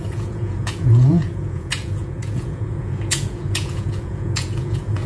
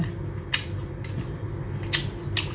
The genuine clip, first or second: second